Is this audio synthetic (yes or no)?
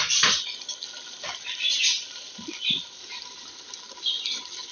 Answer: yes